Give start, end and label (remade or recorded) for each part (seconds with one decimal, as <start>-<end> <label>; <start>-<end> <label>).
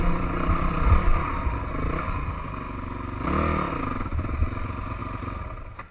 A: 0.0-5.9 recorded